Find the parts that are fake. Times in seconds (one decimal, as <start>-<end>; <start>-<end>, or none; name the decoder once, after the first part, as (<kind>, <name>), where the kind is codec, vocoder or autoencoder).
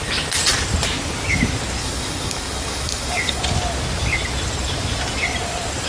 1.8-3.4 (codec, DAC)